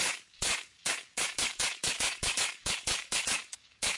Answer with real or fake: fake